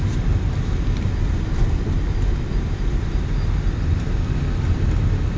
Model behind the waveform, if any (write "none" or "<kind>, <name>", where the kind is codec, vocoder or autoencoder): none